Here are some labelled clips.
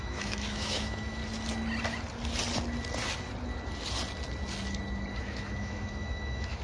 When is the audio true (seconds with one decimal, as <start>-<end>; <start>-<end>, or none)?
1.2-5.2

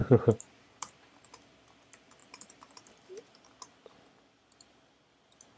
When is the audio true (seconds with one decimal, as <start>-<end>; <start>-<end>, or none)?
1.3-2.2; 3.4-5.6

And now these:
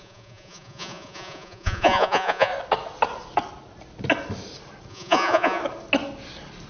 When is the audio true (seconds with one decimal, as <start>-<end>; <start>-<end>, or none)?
2.5-4.9; 5.6-6.7

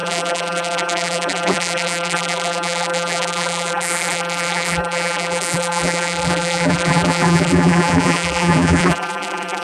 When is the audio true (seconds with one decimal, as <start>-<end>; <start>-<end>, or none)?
none